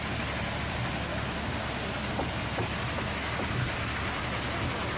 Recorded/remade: recorded